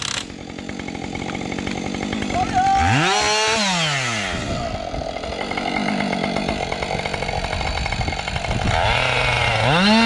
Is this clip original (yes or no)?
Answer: yes